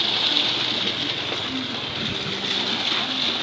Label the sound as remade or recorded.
recorded